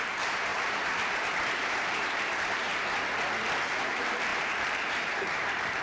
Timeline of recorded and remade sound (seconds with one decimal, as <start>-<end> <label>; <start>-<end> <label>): 0.0-2.7 remade; 2.7-3.8 recorded; 3.8-5.8 remade